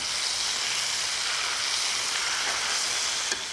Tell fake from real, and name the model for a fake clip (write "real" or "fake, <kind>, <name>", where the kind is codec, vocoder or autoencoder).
real